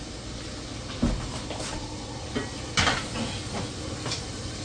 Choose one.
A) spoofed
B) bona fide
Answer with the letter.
B